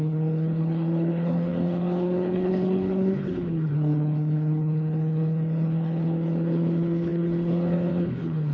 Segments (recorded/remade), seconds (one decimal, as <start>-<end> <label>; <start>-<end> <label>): 0.0-8.5 remade